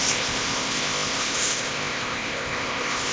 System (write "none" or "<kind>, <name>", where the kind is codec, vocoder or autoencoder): codec, ZipCodec